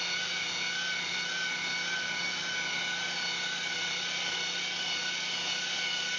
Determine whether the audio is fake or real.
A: real